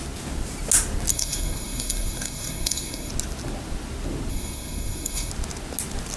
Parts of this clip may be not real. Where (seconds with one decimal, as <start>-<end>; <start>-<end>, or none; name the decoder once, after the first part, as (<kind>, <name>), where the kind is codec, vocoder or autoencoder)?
1.1-3.1 (codec, SNAC); 4.3-5.3